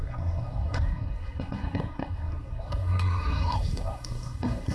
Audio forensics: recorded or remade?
remade